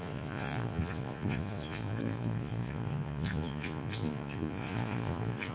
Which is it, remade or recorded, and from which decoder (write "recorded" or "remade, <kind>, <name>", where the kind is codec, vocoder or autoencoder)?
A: remade, vocoder, Vocos